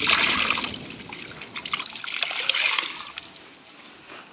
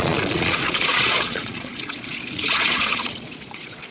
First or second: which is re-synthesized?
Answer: second